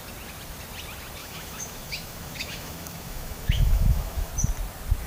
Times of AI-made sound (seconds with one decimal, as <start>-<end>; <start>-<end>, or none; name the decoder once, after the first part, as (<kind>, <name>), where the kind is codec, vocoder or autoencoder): 1.2-4.3 (autoencoder, DAC-VAE)